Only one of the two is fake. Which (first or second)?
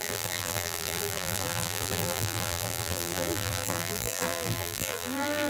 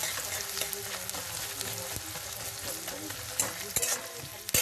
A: first